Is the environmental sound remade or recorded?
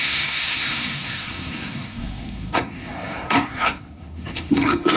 remade